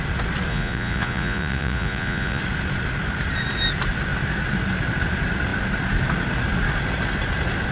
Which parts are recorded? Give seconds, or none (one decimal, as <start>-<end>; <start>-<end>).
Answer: 0.0-0.5; 2.4-7.7